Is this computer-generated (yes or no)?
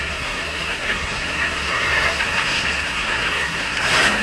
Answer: yes